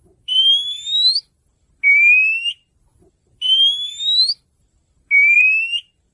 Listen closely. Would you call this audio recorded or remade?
recorded